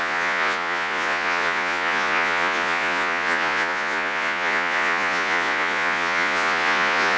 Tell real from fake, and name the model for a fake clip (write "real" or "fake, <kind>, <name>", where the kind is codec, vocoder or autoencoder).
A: fake, vocoder, Vocos